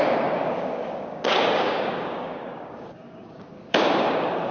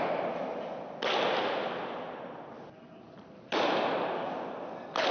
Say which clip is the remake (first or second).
first